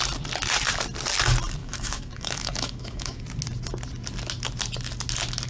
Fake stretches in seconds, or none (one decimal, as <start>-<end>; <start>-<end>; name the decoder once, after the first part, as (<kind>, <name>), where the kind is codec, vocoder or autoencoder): 1.6-3.2 (autoencoder, DAC-VAE)